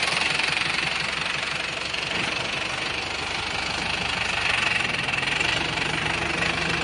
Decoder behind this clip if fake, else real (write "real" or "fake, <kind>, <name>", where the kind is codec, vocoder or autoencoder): real